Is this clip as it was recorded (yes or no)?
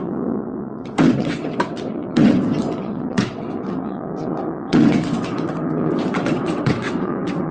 no